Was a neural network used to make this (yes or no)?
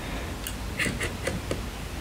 no